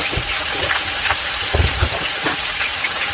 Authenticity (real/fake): fake